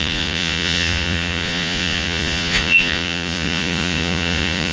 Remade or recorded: remade